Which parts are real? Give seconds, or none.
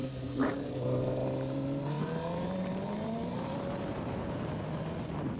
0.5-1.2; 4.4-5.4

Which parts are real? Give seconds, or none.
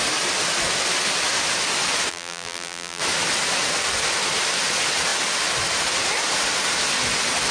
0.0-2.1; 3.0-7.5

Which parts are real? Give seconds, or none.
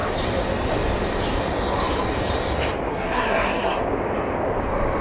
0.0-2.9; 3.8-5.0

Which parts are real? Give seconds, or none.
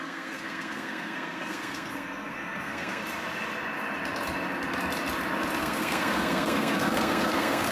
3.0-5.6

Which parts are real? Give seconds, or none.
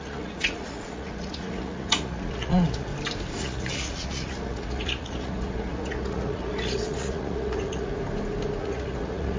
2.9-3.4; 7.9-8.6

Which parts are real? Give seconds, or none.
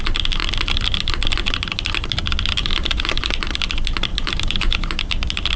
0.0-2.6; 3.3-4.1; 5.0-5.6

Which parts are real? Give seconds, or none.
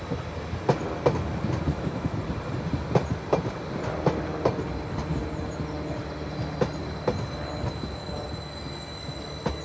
0.0-1.7; 2.2-9.6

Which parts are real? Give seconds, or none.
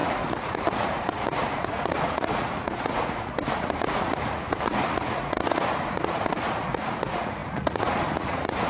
none